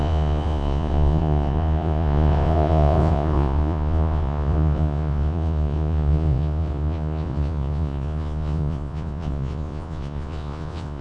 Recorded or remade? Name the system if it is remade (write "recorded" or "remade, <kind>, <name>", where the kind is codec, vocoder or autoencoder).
remade, vocoder, Vocos